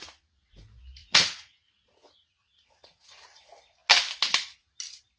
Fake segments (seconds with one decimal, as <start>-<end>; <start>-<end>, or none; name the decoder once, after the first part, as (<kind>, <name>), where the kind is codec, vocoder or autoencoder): 1.0-3.4 (vocoder, Vocos)